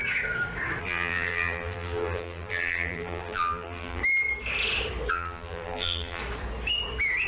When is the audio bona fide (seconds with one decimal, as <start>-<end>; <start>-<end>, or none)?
0.0-0.8; 4.0-5.1; 6.2-7.3